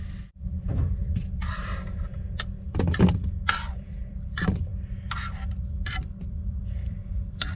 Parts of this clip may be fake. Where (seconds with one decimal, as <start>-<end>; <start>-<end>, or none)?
0.0-1.0; 3.1-4.7; 5.7-7.6